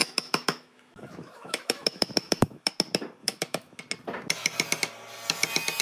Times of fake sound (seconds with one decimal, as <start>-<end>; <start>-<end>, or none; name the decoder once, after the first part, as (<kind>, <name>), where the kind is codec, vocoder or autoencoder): 0.0-2.7 (autoencoder, DAC-VAE); 3.2-3.8